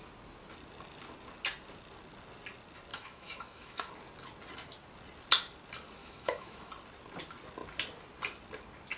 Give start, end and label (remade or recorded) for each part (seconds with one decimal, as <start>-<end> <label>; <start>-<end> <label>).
0.0-2.9 recorded; 2.9-3.9 remade; 3.9-6.0 recorded; 6.0-6.7 remade; 6.7-9.0 recorded